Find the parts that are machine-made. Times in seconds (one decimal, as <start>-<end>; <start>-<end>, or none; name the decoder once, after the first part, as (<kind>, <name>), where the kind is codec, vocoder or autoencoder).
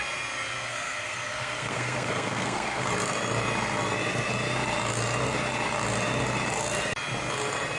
0.7-2.9 (codec, SNAC)